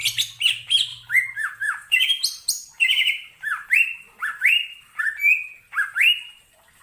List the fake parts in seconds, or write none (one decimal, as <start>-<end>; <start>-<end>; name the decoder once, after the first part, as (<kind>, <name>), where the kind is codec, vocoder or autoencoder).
0.9-5.0 (vocoder, BigVGAN v2)

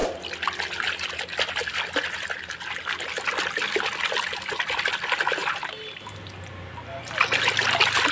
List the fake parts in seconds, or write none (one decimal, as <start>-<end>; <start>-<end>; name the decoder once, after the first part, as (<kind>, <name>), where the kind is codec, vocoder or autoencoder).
none

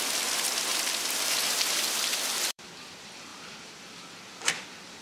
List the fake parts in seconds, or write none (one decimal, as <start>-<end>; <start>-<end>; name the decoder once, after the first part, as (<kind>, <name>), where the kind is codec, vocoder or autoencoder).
0.7-2.6 (vocoder, BigVGAN v2); 3.3-4.1

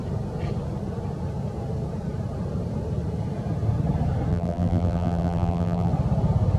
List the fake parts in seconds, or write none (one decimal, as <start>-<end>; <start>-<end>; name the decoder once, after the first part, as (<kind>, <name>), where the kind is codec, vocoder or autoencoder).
4.3-5.9 (vocoder, BigVGAN v2)

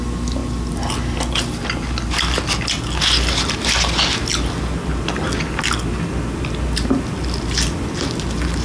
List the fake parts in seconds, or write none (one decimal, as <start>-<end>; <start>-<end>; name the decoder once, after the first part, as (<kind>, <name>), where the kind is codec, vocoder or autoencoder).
none

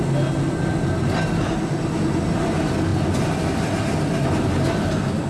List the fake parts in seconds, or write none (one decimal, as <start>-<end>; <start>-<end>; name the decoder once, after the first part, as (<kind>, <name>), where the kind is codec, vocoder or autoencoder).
none

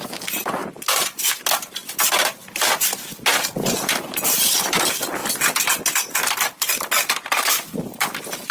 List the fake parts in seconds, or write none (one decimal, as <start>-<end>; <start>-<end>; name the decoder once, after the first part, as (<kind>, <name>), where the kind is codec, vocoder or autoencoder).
0.6-1.2 (vocoder, BigVGAN v2)